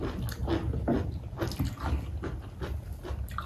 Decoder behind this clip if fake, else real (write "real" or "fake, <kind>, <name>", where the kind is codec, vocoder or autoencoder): real